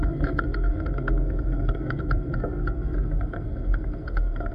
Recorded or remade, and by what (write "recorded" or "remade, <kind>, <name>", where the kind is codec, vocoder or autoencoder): remade, codec, SNAC